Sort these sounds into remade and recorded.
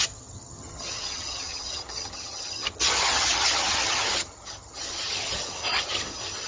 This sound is remade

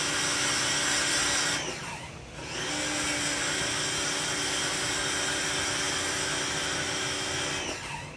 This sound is recorded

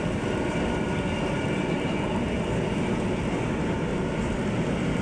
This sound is recorded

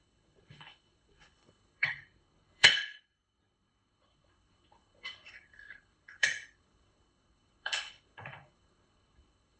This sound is remade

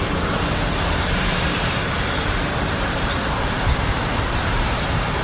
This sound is remade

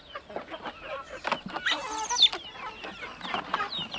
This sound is recorded